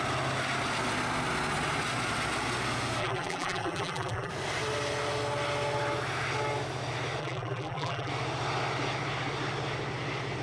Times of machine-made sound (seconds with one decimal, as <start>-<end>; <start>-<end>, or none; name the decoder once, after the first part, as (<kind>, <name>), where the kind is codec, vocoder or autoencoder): 3.0-4.3 (vocoder, BigVGAN v2); 7.2-8.1